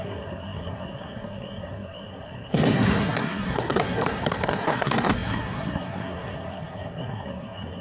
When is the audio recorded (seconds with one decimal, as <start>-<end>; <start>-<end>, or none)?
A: none